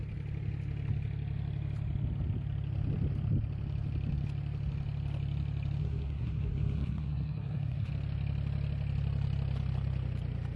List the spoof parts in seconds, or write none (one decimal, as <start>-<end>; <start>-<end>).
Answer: 5.8-7.9